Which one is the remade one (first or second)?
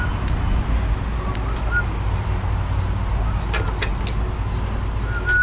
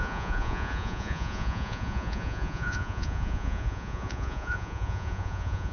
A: second